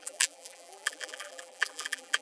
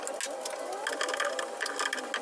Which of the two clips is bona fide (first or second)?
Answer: second